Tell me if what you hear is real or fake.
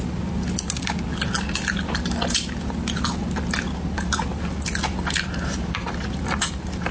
real